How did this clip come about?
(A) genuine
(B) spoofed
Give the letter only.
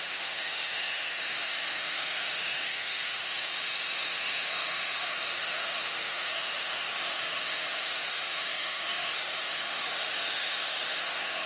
B